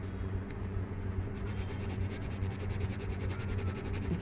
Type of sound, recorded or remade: remade